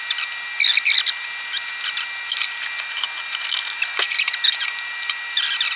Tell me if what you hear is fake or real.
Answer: real